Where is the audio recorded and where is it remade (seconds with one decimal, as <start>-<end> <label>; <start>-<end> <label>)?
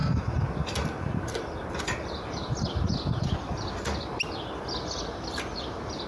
0.0-6.1 recorded